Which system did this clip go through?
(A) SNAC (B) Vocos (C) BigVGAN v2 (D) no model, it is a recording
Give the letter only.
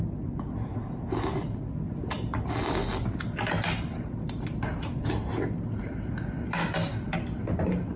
D